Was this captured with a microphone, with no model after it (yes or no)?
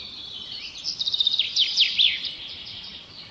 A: yes